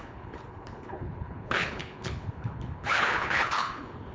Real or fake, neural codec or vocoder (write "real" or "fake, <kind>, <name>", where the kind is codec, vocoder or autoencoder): fake, codec, HILCodec